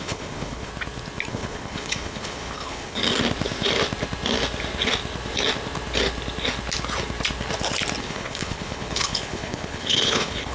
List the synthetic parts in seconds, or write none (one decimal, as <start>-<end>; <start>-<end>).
0.0-0.7; 1.3-3.0; 8.0-10.5